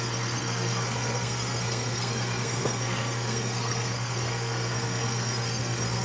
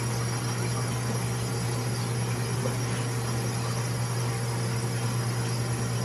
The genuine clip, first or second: second